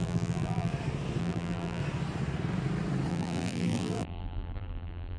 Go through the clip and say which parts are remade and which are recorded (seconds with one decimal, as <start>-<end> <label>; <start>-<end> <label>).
0.0-0.7 remade; 0.7-1.2 recorded; 1.2-1.8 remade; 1.8-3.1 recorded; 3.1-5.2 remade